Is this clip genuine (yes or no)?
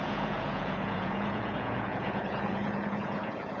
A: no